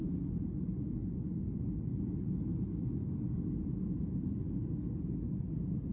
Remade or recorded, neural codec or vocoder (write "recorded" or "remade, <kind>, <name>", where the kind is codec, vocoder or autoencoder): recorded